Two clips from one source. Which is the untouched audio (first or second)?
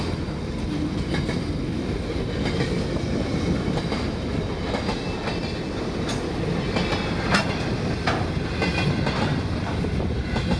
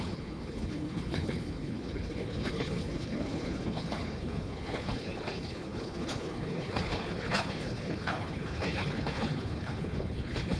first